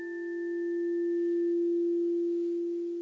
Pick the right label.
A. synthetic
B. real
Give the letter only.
B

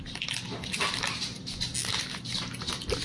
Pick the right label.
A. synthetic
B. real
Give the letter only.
B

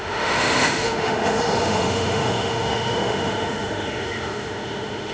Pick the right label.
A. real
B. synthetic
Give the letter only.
B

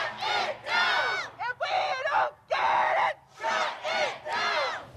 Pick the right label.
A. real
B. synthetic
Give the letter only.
A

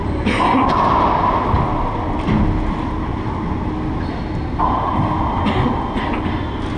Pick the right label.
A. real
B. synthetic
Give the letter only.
A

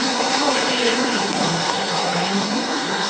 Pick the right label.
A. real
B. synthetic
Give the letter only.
B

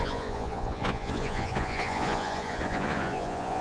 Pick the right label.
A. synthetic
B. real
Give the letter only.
A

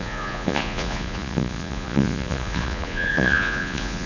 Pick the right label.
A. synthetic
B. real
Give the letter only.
A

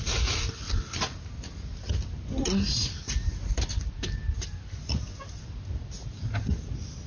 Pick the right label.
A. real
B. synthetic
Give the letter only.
A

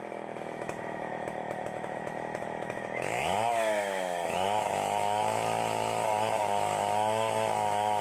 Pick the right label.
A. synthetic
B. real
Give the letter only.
A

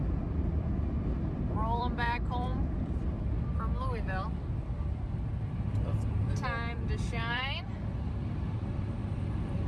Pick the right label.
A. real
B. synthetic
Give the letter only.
B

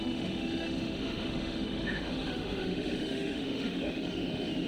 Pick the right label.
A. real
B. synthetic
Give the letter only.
B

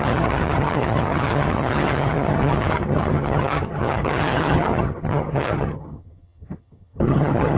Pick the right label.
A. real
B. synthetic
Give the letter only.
B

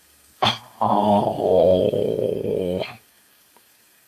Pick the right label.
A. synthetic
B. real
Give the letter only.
A